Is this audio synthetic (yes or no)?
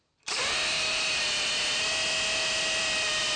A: yes